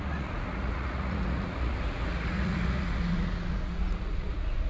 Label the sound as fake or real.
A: fake